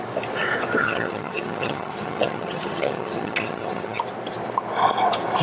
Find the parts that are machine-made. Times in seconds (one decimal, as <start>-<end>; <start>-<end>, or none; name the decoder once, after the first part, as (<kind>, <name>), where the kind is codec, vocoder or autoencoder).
0.8-4.0 (vocoder, HiFi-GAN)